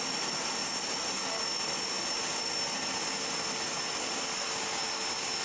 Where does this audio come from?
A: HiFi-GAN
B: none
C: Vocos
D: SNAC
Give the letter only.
B